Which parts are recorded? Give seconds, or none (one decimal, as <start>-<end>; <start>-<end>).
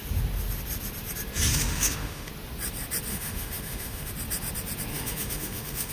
0.0-1.5; 2.3-3.1; 4.1-4.9